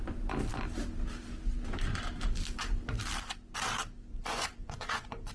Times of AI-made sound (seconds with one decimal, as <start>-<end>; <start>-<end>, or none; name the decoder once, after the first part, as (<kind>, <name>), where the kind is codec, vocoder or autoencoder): 4.1-5.3 (vocoder, Vocos)